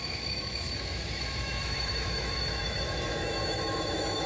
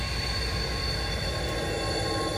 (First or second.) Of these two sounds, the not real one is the first